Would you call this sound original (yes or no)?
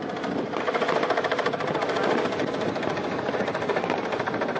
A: yes